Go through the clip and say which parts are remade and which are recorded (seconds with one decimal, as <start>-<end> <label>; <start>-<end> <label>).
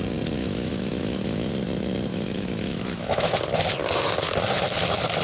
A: 0.0-0.4 recorded; 0.4-1.5 remade; 1.5-2.1 recorded; 2.1-3.4 remade; 3.4-5.2 recorded